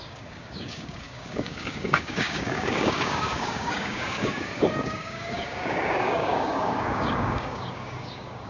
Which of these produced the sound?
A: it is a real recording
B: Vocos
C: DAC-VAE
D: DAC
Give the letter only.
D